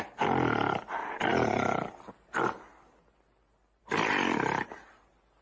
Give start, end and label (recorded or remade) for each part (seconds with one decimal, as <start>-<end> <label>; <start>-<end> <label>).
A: 0.0-5.4 recorded